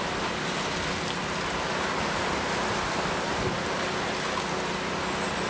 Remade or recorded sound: recorded